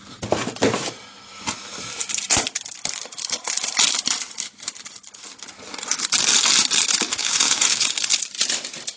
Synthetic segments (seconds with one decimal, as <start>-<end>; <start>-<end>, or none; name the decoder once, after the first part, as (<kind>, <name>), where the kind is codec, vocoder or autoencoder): 7.2-8.0 (codec, DAC)